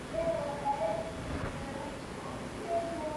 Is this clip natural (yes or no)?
yes